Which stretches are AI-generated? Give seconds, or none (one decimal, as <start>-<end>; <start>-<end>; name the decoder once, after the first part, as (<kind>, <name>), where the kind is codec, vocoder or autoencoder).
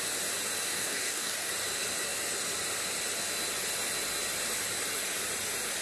0.7-1.5 (codec, DAC)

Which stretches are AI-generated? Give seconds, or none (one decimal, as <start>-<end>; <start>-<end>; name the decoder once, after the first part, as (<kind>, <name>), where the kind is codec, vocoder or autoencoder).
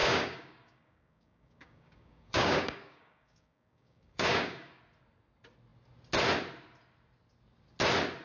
0.0-4.8 (codec, DAC)